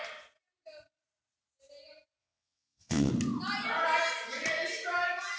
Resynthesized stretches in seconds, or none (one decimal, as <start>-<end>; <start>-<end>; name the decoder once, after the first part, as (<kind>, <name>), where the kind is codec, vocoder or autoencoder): 2.2-3.1 (vocoder, WaveNeXt)